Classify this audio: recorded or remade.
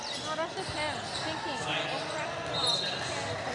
recorded